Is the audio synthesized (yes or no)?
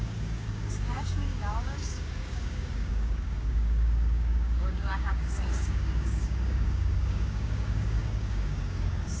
yes